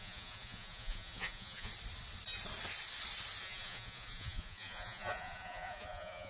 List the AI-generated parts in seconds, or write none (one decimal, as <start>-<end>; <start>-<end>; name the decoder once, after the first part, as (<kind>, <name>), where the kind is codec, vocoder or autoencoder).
0.0-1.7 (vocoder, Vocos); 3.4-6.3